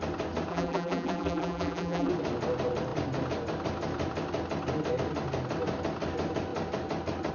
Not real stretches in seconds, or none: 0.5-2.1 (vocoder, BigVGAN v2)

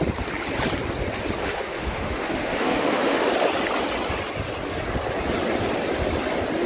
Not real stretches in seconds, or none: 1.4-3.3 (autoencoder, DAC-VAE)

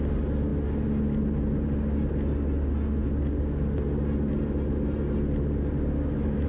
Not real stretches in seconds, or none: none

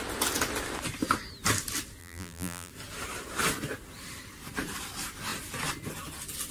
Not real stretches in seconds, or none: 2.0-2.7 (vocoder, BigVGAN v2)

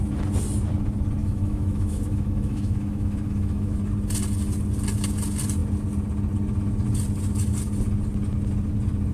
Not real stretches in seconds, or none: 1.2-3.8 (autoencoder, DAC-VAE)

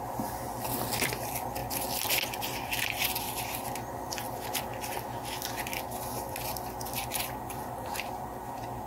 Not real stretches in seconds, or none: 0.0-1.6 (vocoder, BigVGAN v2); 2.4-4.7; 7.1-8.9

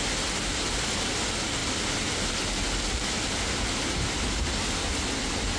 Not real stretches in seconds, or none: none

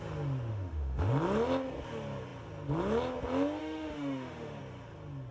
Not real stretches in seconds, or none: 0.5-1.1 (autoencoder, DAC-VAE); 3.6-4.6